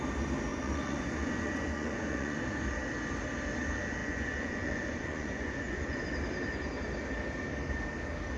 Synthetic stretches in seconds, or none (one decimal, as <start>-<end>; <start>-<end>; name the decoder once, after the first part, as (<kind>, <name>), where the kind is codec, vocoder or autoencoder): 0.5-2.6 (vocoder, Vocos); 4.0-6.0